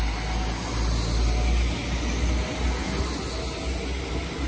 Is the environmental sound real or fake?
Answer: real